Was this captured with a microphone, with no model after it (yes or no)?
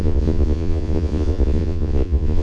no